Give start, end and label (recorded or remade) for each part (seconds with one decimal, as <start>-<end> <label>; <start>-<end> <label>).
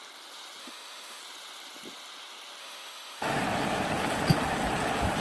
0.0-0.6 recorded; 0.6-1.2 remade; 1.2-2.6 recorded; 2.6-3.4 remade; 3.4-5.2 recorded